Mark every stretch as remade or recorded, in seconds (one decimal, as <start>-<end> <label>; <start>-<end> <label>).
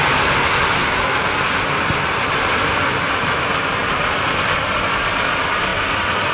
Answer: 0.0-0.8 remade; 0.8-2.3 recorded; 2.3-5.7 remade; 5.7-6.3 recorded